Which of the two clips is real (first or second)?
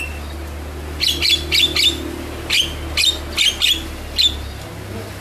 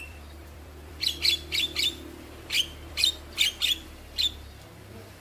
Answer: first